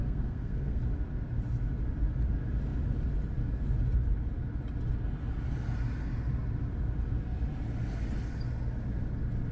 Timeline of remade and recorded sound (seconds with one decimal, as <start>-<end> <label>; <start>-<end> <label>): 0.0-0.8 remade; 0.8-9.5 recorded